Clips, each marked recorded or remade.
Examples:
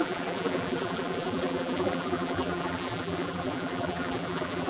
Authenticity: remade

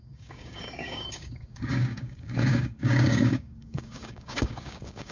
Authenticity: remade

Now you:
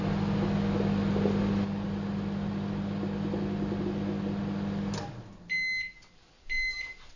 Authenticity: recorded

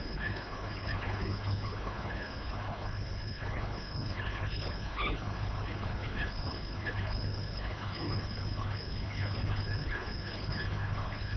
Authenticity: remade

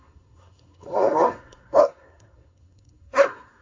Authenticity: remade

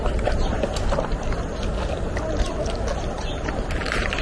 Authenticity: recorded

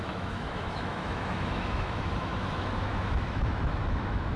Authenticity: remade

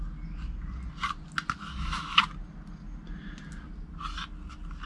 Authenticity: recorded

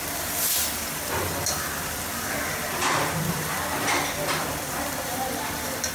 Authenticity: remade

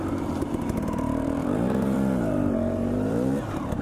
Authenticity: remade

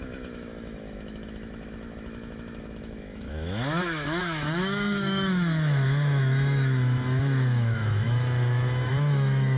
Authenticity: remade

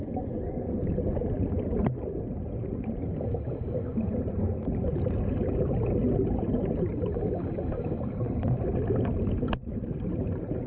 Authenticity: recorded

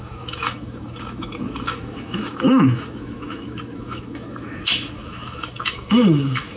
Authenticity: remade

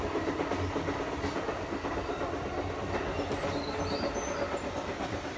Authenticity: recorded